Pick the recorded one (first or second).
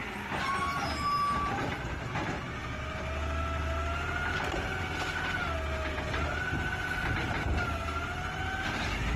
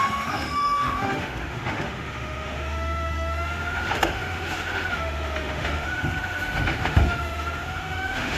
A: first